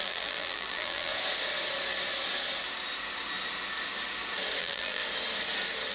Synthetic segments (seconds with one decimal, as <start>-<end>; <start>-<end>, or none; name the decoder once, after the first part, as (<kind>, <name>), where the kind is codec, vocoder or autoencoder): 0.0-1.1 (vocoder, BigVGAN v2); 4.6-5.0

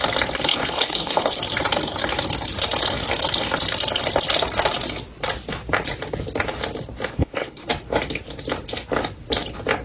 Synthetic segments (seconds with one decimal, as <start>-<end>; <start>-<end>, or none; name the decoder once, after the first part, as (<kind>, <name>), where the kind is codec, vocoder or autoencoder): 0.5-1.4 (codec, HILCodec); 7.1-7.7

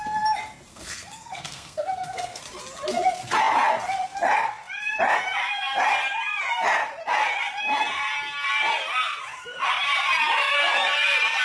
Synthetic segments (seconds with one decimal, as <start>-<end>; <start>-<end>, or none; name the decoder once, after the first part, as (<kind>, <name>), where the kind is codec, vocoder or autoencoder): 0.7-2.4 (codec, SNAC)

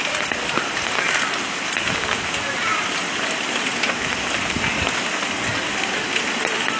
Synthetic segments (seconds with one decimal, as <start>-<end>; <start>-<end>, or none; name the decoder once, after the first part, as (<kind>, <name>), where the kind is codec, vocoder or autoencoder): none

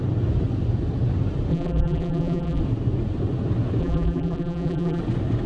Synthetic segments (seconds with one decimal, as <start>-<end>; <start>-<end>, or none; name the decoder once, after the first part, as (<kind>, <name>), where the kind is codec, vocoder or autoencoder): 1.5-2.6 (vocoder, BigVGAN v2); 3.8-5.0

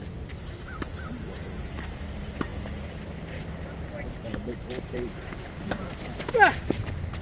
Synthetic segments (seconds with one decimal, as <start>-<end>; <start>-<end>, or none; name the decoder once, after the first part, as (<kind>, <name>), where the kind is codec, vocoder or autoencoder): 4.3-5.9 (vocoder, BigVGAN v2)